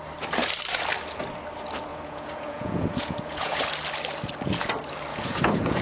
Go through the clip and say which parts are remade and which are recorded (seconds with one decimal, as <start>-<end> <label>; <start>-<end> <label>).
0.0-1.9 recorded; 1.9-3.6 remade; 3.6-5.1 recorded; 5.1-5.8 remade